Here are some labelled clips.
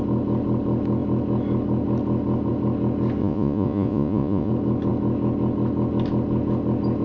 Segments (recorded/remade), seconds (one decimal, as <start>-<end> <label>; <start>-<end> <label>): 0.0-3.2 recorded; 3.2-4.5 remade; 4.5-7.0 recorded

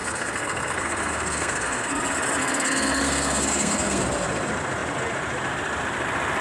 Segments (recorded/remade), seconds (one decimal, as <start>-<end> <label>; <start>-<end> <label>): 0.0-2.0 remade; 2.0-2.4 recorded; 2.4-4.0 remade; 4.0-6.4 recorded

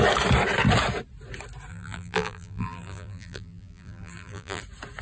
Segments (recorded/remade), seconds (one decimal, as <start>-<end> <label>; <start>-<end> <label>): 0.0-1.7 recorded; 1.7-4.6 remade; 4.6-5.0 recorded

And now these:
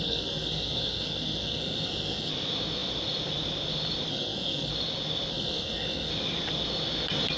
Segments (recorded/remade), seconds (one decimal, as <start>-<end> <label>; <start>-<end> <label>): 0.0-2.3 remade; 2.3-4.1 recorded; 4.1-4.7 remade; 4.7-5.3 recorded; 5.3-6.1 remade; 6.1-7.4 recorded

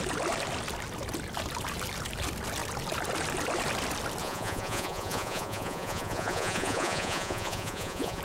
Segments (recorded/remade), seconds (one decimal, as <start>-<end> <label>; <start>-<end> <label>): 0.0-4.2 recorded; 4.2-8.2 remade